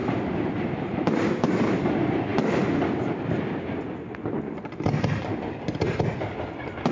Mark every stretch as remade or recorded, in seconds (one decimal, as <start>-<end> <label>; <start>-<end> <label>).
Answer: 0.0-1.9 remade; 1.9-6.9 recorded